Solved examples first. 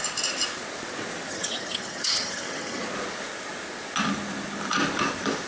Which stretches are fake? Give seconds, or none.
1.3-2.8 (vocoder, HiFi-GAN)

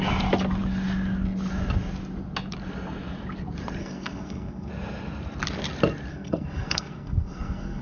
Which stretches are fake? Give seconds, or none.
3.8-4.7 (codec, SNAC); 6.1-7.8

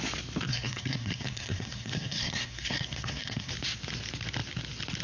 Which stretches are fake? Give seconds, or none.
0.5-3.5 (codec, SNAC)

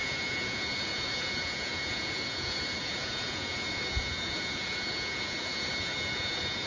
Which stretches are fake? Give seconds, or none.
0.0-6.7 (vocoder, Vocos)

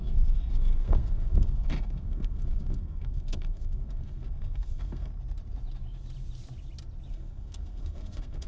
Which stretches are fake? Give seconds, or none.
0.0-5.1 (codec, SNAC); 7.1-8.5

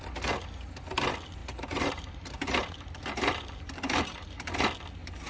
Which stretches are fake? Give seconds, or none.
1.4-4.5 (vocoder, BigVGAN v2)

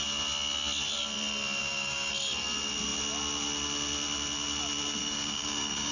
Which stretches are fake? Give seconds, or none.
1.6-2.1 (codec, DAC); 5.0-5.9